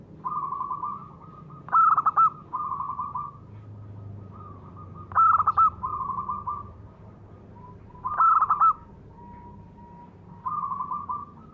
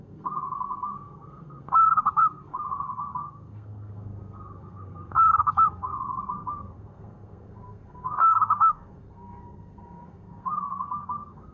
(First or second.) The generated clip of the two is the second